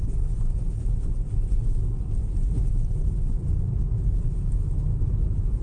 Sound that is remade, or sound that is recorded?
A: recorded